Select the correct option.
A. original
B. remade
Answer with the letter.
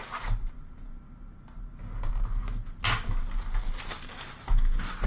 A